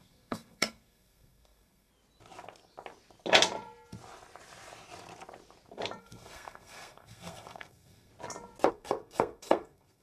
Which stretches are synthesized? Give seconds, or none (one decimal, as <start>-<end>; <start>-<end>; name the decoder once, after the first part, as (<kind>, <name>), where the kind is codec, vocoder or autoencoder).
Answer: 0.0-1.9 (codec, SNAC); 6.0-8.1; 8.7-10.0